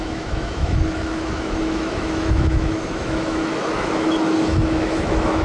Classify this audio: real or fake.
fake